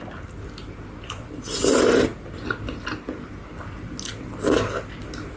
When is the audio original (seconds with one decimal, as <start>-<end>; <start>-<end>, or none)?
0.0-5.4